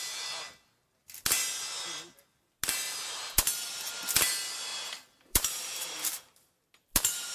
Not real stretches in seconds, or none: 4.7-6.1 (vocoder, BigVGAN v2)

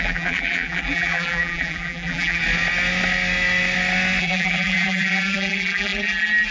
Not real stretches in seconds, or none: 0.0-2.4 (vocoder, BigVGAN v2); 4.2-6.5

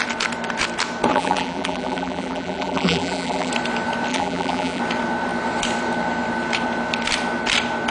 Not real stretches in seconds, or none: 1.1-3.5 (vocoder, BigVGAN v2); 4.1-4.8

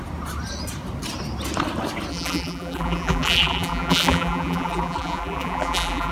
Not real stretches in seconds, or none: 2.1-6.1 (vocoder, BigVGAN v2)

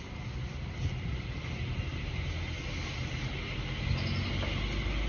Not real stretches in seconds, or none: 1.9-3.3 (vocoder, BigVGAN v2)